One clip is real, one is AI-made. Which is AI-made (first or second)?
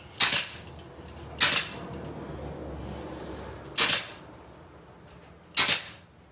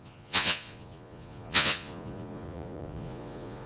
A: second